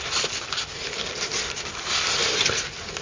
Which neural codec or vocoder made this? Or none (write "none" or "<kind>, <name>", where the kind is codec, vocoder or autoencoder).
none